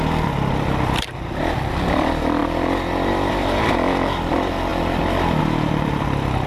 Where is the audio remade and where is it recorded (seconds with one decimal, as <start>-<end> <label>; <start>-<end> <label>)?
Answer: 0.0-4.7 remade; 4.7-5.4 recorded; 5.4-6.5 remade